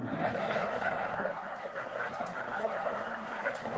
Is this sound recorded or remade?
remade